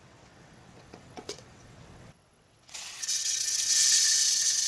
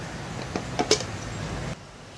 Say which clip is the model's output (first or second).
first